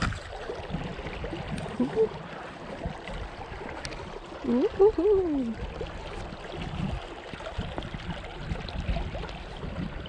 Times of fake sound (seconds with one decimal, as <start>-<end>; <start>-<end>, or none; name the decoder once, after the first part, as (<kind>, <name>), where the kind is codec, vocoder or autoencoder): none